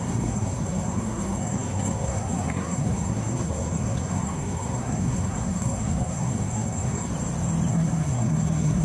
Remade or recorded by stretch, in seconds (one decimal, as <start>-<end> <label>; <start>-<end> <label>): 0.0-7.1 remade; 7.1-7.7 recorded; 7.7-8.8 remade

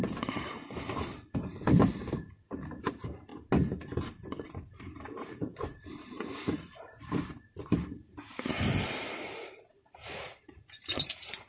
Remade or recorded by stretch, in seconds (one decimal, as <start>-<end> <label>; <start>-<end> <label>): 0.0-3.3 remade; 3.3-4.5 recorded; 4.5-11.5 remade